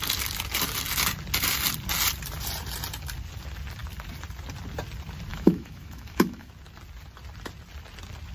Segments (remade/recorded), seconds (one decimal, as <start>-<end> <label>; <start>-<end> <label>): 0.0-5.3 recorded; 5.3-6.5 remade; 6.5-8.3 recorded